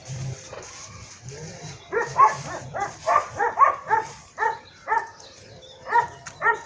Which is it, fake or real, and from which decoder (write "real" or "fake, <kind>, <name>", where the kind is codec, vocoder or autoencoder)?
fake, vocoder, BigVGAN v2